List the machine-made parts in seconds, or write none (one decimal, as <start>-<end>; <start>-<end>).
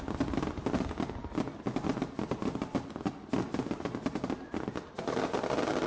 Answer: none